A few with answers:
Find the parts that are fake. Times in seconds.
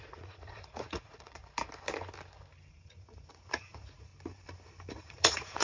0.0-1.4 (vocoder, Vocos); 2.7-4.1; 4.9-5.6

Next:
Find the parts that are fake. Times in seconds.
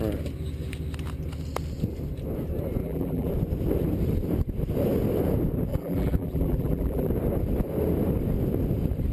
2.8-3.3 (vocoder, BigVGAN v2); 5.7-7.1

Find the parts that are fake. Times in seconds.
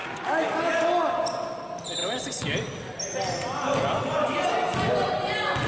none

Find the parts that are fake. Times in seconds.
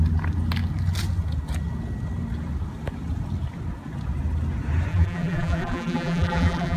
4.9-6.8 (vocoder, BigVGAN v2)